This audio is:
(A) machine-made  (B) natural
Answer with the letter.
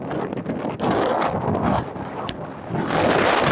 B